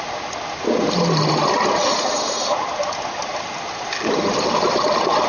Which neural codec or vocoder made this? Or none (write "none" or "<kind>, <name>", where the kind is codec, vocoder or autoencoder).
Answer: none